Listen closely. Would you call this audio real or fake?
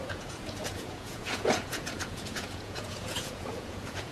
fake